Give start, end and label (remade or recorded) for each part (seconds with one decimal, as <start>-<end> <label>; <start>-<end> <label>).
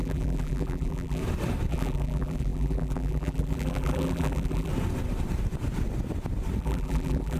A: 0.0-1.2 remade; 1.2-1.7 recorded; 1.7-4.7 remade; 4.7-6.6 recorded; 6.6-7.4 remade